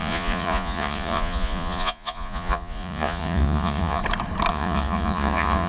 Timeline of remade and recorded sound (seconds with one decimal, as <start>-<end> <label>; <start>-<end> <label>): 0.0-4.0 remade; 4.0-4.5 recorded; 4.5-5.7 remade